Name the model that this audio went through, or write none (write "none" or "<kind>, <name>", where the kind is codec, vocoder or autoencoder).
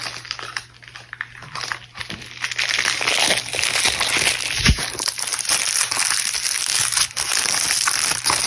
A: none